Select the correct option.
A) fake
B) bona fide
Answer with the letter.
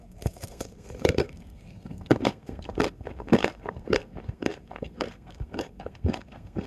A